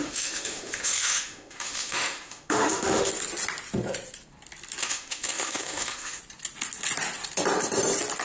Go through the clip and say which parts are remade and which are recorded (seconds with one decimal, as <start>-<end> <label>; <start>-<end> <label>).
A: 0.0-3.1 remade; 3.1-4.8 recorded; 4.8-6.2 remade; 6.2-8.2 recorded